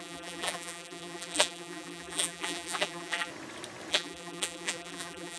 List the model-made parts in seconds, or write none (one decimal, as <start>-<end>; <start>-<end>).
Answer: 0.0-3.3; 3.9-5.4